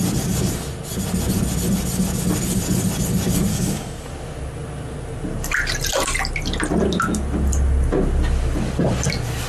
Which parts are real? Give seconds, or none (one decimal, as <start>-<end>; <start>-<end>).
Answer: 0.0-3.5; 4.1-9.5